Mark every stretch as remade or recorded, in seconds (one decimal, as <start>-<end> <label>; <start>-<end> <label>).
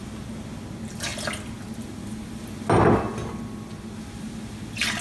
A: 0.0-5.0 recorded